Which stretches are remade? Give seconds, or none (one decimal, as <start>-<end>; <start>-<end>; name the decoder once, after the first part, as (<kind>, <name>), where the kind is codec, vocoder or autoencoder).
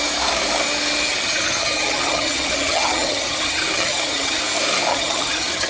1.1-4.4 (vocoder, HiFi-GAN); 4.9-5.7